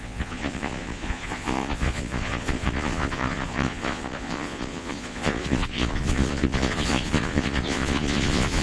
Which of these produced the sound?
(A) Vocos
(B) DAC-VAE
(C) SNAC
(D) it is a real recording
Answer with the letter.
A